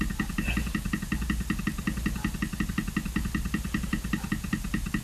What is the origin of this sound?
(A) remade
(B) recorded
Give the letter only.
B